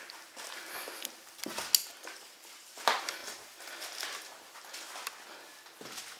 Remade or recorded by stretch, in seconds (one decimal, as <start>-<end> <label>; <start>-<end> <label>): 0.0-1.8 recorded; 1.8-2.8 remade; 2.8-6.2 recorded